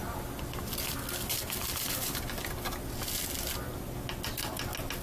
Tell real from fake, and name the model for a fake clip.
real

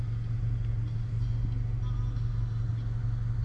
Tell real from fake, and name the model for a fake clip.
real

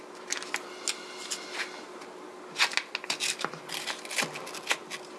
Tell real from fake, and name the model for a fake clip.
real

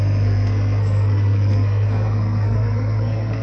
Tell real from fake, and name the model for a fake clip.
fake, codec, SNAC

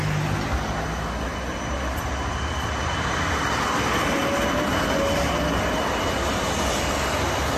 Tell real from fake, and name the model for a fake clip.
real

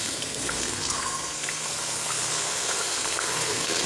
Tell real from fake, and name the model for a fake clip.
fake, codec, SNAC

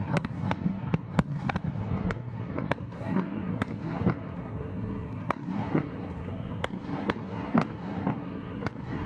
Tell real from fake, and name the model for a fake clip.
fake, codec, SNAC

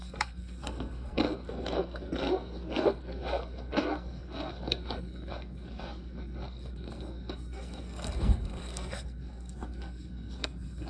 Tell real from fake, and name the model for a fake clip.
fake, codec, SNAC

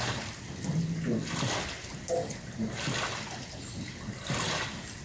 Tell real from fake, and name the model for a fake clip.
real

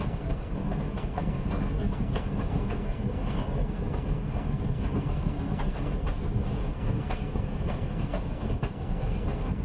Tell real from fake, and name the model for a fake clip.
fake, codec, SNAC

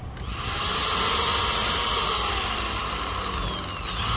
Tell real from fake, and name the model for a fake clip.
real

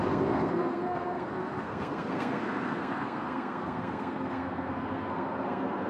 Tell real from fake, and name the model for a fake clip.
fake, codec, SNAC